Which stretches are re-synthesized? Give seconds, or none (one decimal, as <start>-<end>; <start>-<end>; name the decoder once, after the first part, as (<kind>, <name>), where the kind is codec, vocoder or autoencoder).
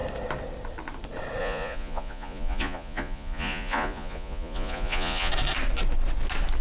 1.4-5.3 (vocoder, Vocos)